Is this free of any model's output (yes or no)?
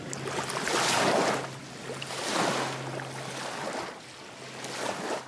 yes